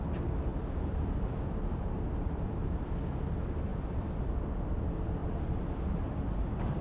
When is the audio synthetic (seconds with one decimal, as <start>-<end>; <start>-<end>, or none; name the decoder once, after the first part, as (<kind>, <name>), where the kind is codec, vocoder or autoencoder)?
0.5-1.0 (vocoder, BigVGAN v2); 3.7-4.4; 5.2-6.8